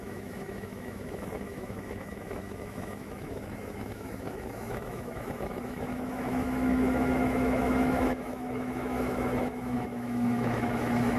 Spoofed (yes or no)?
yes